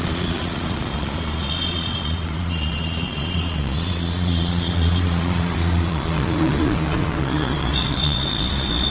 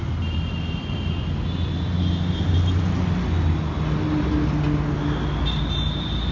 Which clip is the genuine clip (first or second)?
second